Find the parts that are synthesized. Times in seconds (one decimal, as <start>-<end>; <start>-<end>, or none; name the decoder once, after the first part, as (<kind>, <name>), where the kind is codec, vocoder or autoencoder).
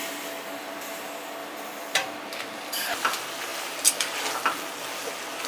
1.4-2.9 (vocoder, BigVGAN v2)